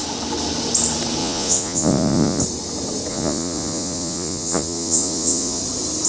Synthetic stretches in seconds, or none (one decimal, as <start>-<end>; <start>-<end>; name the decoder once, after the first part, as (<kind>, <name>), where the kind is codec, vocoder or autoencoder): 1.2-2.4 (vocoder, Vocos); 3.1-5.6